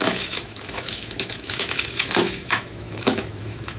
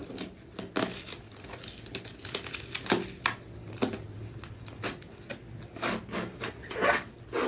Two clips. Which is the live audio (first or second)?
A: second